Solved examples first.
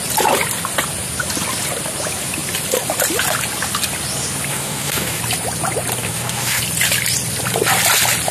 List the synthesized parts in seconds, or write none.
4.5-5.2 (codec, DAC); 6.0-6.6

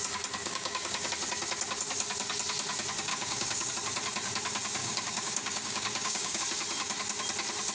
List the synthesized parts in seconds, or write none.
0.4-1.1 (codec, DAC); 3.1-3.7; 4.8-6.4